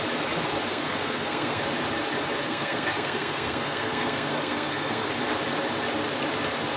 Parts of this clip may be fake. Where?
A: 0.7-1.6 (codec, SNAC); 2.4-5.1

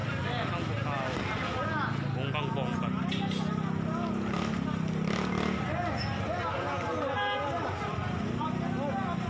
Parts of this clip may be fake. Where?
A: none

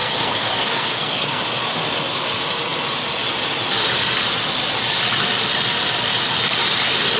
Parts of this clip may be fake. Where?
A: 0.0-1.4 (codec, SNAC)

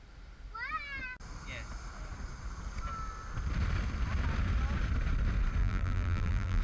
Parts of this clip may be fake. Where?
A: 5.6-6.6 (vocoder, BigVGAN v2)